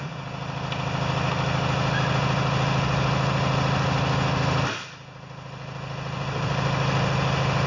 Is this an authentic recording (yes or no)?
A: yes